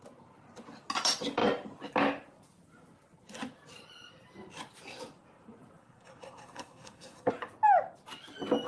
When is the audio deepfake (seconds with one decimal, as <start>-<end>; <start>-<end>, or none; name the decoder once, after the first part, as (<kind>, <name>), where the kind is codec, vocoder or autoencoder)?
5.8-7.3 (codec, SNAC)